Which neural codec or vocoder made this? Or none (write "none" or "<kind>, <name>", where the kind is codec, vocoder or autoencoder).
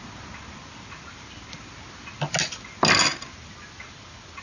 none